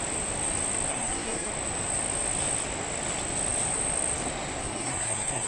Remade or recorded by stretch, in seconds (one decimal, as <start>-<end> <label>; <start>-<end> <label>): 0.0-0.9 recorded; 0.9-1.5 remade; 1.5-4.6 recorded; 4.6-5.5 remade